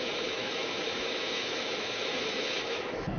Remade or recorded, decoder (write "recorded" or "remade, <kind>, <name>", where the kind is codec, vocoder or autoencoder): remade, autoencoder, DAC-VAE